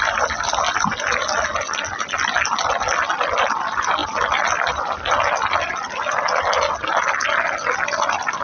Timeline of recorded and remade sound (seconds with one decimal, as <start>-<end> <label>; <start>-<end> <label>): 0.0-8.4 recorded